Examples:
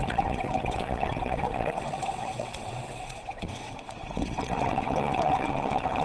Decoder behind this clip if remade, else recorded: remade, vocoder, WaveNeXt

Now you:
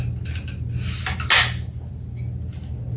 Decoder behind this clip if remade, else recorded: recorded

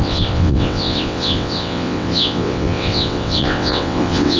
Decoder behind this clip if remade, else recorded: remade, vocoder, WaveNeXt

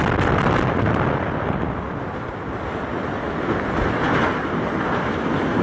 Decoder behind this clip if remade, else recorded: recorded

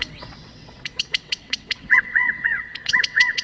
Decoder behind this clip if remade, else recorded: remade, vocoder, WaveNeXt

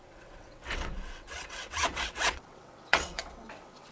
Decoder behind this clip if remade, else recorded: remade, vocoder, WaveNeXt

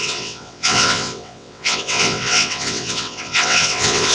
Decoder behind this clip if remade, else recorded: remade, vocoder, WaveNeXt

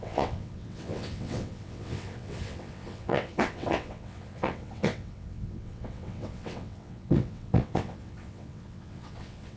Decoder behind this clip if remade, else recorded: remade, vocoder, WaveNeXt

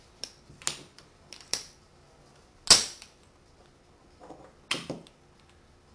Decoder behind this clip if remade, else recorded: recorded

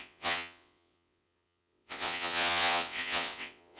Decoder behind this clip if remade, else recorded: remade, vocoder, WaveNeXt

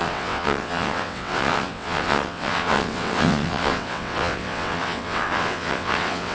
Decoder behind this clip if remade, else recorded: remade, vocoder, WaveNeXt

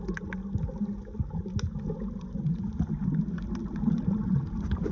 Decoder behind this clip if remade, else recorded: recorded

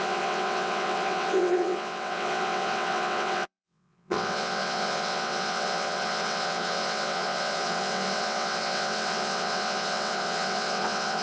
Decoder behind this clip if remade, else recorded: remade, vocoder, WaveNeXt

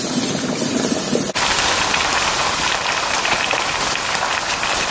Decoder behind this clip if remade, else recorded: recorded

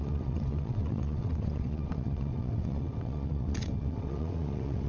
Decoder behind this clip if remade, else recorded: remade, vocoder, WaveNeXt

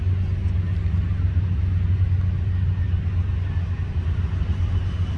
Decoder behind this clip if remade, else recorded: recorded